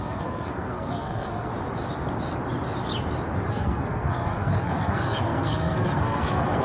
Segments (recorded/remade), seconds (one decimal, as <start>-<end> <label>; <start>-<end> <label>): 0.0-1.5 remade; 1.5-3.5 recorded; 3.5-6.6 remade